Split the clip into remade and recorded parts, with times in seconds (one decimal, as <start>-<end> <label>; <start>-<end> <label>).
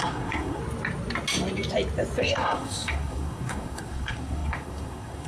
0.0-0.6 remade; 0.6-2.2 recorded; 2.2-5.3 remade